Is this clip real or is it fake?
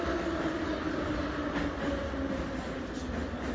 real